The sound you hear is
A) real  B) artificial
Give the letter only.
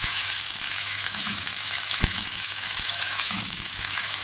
B